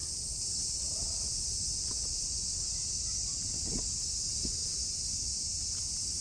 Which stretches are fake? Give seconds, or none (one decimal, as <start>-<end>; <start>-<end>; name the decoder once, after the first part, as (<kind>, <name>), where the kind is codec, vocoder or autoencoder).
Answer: 0.0-1.7 (vocoder, BigVGAN v2)